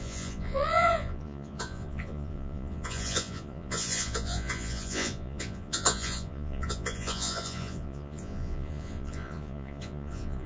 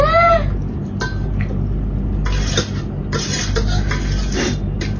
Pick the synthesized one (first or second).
first